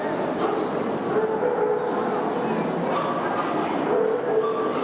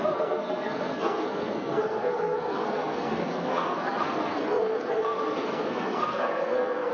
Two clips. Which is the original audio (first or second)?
first